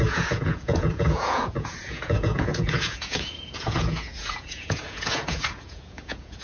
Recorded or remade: remade